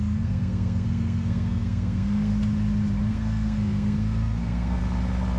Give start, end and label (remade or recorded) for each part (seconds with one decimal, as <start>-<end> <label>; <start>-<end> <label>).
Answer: 0.0-2.3 remade; 2.3-3.1 recorded; 3.1-4.8 remade; 4.8-5.4 recorded